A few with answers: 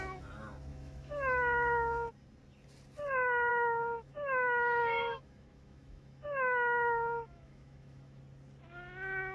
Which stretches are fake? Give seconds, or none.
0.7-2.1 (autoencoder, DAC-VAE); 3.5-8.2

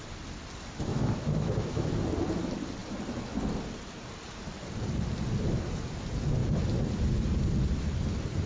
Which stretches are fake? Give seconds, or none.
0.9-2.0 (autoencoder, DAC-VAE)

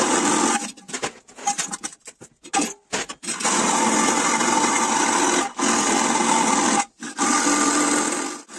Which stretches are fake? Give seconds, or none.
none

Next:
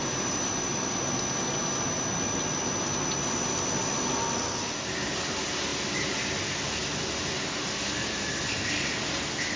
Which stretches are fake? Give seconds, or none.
none

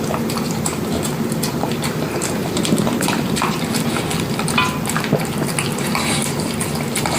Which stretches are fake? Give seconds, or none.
none